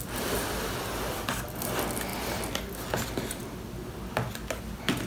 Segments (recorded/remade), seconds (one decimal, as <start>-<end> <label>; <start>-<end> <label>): 0.0-5.1 recorded